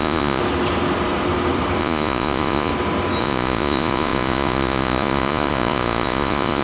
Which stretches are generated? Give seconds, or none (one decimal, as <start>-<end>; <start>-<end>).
0.0-0.4; 1.8-2.7; 3.2-6.6

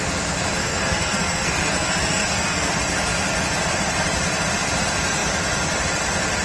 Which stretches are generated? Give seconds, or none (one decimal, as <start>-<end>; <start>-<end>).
0.6-2.7